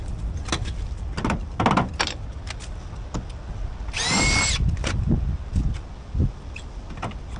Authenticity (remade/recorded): recorded